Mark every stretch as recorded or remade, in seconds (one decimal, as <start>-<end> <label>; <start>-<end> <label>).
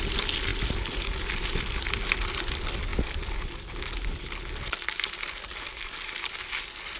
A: 0.0-7.0 recorded